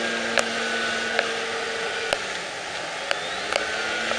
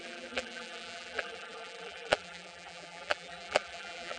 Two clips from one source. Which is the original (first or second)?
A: first